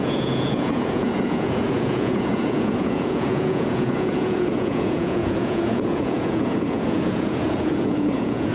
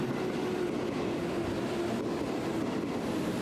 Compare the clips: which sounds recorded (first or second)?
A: second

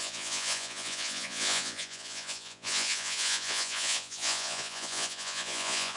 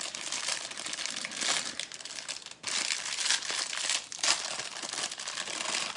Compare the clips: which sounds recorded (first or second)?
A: second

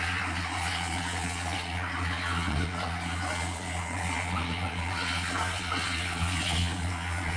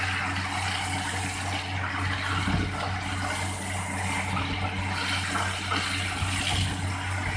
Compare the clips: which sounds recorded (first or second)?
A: second